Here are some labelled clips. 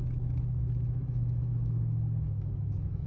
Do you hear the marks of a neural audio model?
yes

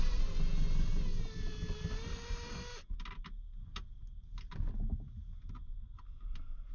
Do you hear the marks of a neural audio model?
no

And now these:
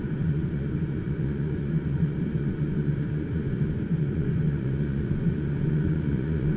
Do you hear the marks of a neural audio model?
yes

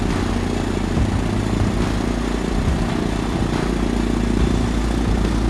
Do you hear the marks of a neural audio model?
no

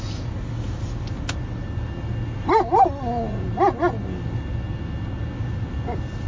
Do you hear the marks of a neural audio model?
no